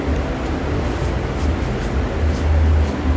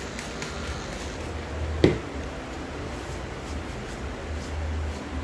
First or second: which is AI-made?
second